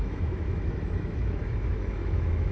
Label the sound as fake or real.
fake